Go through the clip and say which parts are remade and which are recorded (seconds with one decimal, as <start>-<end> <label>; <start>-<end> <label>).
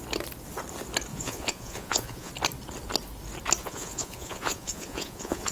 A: 0.0-1.1 recorded; 1.1-2.3 remade; 2.3-3.6 recorded; 3.6-5.5 remade